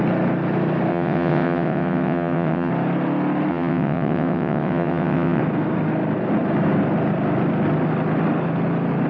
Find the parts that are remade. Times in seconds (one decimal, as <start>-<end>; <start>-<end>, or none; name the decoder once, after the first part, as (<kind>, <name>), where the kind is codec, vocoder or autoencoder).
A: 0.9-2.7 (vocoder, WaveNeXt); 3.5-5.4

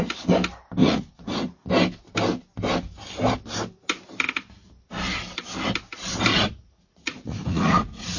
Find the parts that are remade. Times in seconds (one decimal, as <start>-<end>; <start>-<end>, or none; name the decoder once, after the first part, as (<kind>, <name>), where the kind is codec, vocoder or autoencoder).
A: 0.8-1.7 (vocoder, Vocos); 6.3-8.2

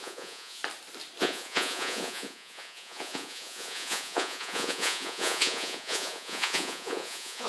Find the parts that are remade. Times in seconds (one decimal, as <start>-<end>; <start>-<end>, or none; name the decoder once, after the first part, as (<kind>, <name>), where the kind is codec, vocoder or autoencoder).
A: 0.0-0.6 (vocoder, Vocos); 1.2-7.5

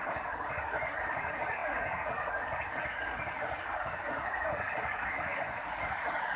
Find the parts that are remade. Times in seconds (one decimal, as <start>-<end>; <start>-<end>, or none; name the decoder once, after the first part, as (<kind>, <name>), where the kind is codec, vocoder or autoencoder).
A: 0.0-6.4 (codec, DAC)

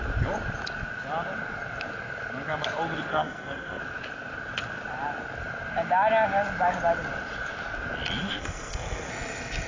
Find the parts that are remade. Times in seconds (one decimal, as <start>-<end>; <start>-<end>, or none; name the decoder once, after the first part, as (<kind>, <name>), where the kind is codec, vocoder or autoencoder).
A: 3.1-3.8 (codec, SNAC); 8.2-9.1